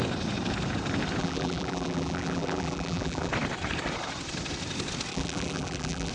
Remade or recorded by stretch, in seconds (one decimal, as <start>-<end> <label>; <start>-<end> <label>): 0.0-1.2 recorded; 1.2-3.3 remade; 3.3-5.1 recorded; 5.1-6.1 remade